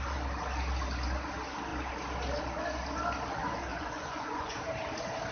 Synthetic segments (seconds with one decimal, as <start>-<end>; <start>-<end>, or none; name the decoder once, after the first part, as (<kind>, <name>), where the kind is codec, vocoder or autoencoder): 3.7-4.6 (vocoder, Vocos)